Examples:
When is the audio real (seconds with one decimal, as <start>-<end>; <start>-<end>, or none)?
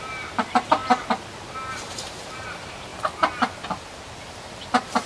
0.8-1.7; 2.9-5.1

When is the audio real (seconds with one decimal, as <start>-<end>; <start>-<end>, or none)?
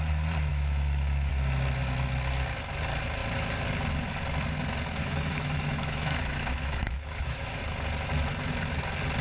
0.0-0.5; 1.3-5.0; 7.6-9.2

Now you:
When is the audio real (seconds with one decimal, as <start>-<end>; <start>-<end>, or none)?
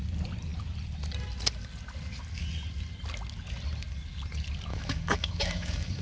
0.0-4.7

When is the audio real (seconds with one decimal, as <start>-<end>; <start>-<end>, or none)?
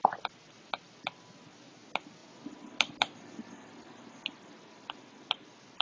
0.0-5.8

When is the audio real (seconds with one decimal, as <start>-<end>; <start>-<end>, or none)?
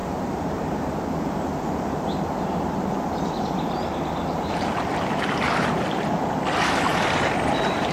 4.7-6.9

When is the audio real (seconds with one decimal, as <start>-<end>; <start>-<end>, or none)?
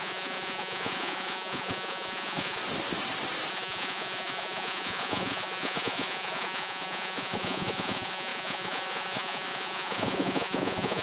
2.6-3.5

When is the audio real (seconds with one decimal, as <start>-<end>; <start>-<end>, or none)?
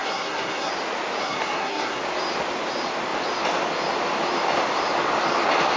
0.7-1.2; 2.0-5.8